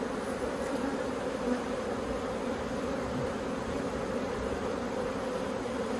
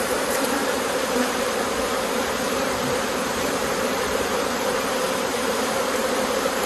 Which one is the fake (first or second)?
second